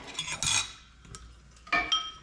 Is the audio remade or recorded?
recorded